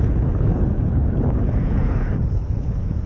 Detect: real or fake fake